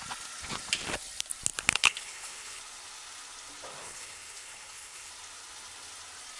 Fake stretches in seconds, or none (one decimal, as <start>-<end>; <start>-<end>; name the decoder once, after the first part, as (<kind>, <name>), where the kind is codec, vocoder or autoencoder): 1.7-2.6 (codec, HILCodec); 3.8-5.1